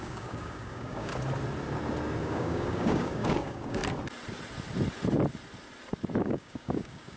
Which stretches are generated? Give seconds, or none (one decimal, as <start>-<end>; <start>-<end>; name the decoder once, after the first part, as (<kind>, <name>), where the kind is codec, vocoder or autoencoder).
0.0-1.1 (codec, DAC); 2.2-3.8; 6.2-7.2